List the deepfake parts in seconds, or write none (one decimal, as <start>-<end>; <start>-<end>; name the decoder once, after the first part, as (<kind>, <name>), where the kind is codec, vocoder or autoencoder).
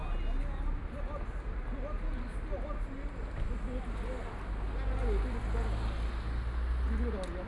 none